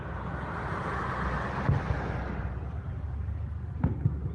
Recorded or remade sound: recorded